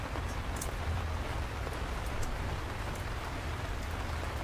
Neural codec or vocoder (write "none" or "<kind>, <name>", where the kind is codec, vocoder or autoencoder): vocoder, BigVGAN v2